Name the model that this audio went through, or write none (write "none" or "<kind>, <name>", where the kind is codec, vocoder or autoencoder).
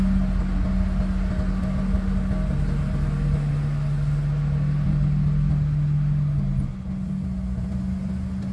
none